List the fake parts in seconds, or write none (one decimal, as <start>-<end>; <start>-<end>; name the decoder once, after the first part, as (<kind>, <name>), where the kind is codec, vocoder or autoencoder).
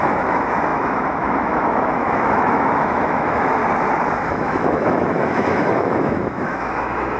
0.0-3.6 (autoencoder, DAC-VAE); 4.3-7.2